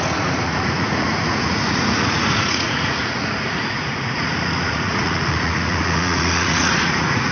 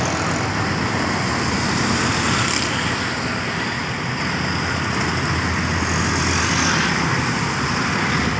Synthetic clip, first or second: first